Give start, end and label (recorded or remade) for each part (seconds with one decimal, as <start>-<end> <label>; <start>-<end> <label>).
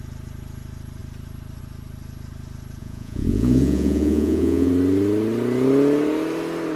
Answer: 0.0-2.8 recorded; 2.8-4.7 remade; 4.7-6.8 recorded